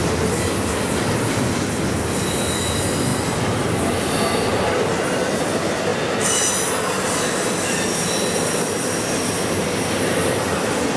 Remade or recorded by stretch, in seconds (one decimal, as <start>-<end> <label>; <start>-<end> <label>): 0.0-11.0 recorded